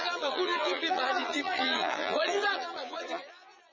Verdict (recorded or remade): remade